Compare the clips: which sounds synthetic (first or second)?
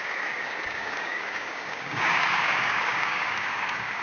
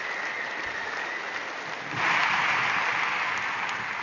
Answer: first